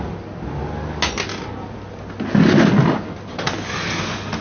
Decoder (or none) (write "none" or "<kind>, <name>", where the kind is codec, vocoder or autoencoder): none